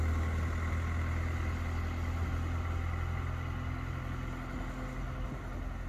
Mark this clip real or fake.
real